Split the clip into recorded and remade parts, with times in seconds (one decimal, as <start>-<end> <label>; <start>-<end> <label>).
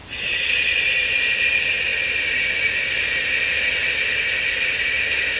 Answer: 0.0-0.8 remade; 0.8-5.4 recorded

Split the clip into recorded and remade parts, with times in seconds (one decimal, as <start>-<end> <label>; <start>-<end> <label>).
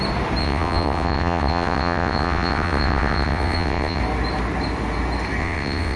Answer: 0.0-0.4 recorded; 0.4-4.0 remade; 4.0-5.4 recorded; 5.4-6.0 remade